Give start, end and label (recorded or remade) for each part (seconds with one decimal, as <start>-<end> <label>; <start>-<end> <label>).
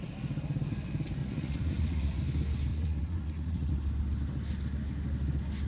0.0-1.2 recorded; 1.2-2.2 remade; 2.2-2.7 recorded; 2.7-3.7 remade; 3.7-5.7 recorded